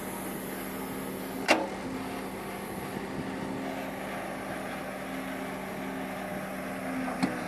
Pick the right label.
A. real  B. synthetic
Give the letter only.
A